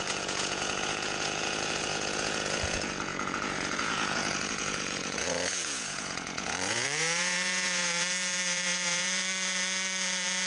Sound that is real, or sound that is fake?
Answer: fake